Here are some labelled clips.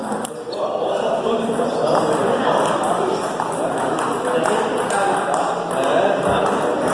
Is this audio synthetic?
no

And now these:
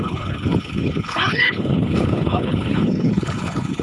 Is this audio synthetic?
yes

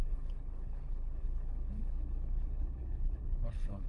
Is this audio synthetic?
yes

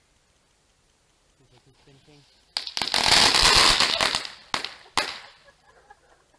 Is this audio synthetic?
no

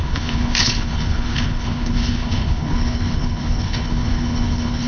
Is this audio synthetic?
yes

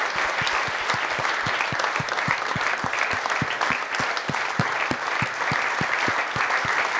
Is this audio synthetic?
no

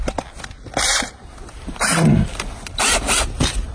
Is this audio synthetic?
no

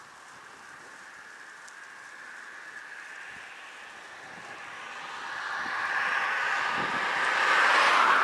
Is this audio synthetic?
no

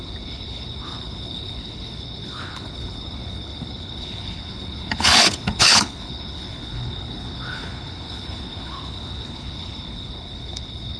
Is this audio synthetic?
yes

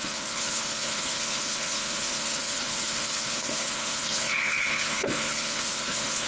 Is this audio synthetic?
yes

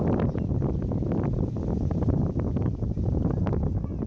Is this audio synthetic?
no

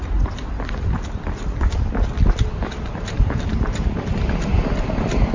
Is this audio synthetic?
no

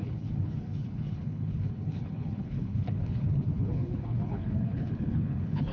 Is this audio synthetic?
yes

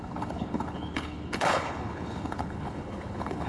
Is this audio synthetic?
yes